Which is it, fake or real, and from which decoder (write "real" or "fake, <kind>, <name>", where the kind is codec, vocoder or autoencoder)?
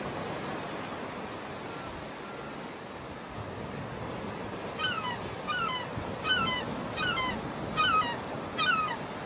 real